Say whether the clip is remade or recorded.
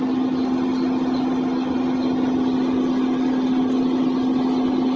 recorded